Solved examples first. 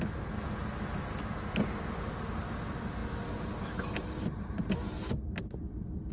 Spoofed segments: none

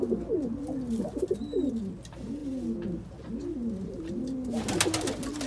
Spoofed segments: none

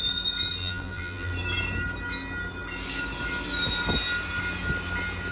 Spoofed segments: 0.6-1.3 (vocoder, BigVGAN v2)

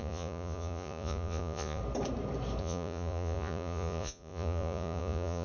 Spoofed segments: 0.0-1.8 (vocoder, Vocos); 2.6-5.4

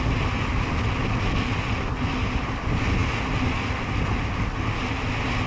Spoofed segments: none